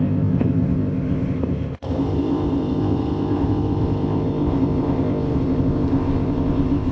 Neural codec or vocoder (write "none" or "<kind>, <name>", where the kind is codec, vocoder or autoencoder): codec, ZipCodec